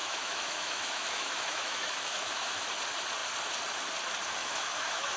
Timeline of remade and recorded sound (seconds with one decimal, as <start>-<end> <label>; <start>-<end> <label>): 0.0-2.7 remade; 2.7-4.4 recorded; 4.4-5.2 remade